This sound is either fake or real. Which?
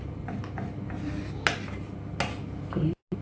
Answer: real